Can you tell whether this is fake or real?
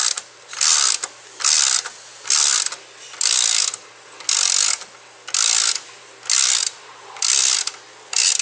real